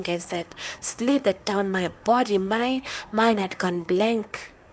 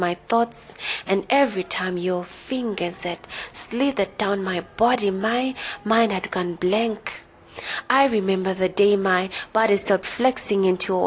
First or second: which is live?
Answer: second